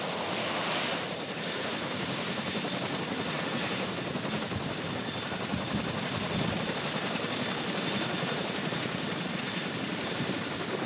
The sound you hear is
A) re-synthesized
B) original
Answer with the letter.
A